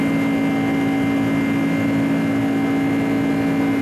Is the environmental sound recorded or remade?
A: recorded